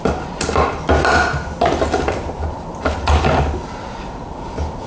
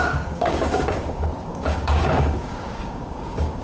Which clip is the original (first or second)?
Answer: first